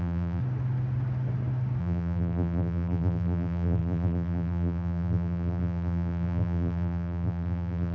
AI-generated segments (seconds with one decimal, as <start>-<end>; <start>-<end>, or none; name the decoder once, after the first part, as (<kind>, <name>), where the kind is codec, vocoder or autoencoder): 0.0-0.4 (vocoder, BigVGAN v2); 1.8-7.9